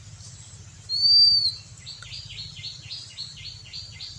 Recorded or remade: recorded